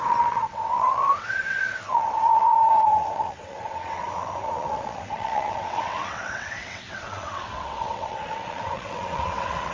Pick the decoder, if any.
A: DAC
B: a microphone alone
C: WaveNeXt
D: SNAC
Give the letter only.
C